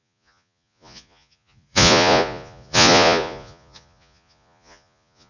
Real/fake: fake